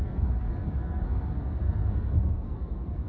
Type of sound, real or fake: fake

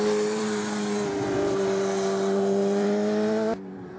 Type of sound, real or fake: fake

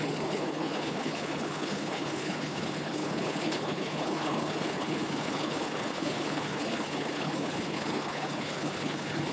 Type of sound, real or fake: fake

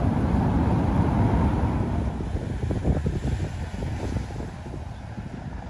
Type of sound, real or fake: real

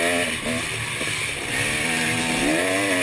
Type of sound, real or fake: real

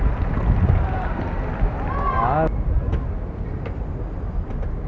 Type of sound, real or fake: real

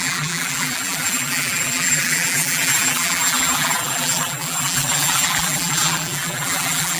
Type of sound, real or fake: fake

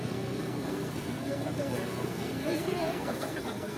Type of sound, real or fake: fake